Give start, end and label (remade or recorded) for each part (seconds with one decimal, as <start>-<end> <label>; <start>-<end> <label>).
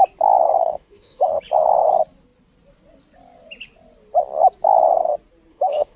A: 0.0-0.6 recorded; 0.6-1.4 remade; 1.4-5.5 recorded; 5.5-6.0 remade